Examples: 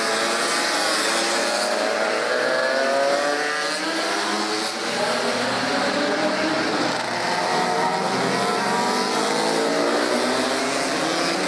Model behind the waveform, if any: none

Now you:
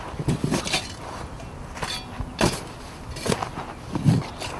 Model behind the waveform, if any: none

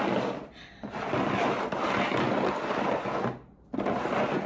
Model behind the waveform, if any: none